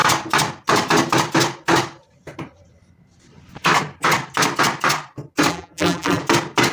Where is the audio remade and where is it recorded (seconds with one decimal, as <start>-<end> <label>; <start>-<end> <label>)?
0.0-5.5 recorded; 5.5-6.2 remade; 6.2-6.7 recorded